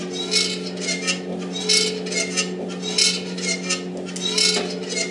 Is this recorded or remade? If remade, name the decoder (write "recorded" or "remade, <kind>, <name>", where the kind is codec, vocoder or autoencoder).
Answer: recorded